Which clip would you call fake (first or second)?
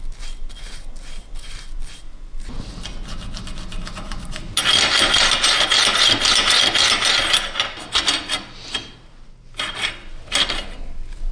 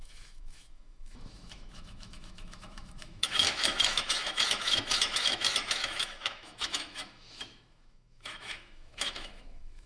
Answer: second